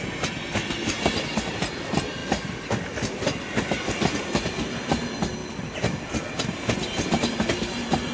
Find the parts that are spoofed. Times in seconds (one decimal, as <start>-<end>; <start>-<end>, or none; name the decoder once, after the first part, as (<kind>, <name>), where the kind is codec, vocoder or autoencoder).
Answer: none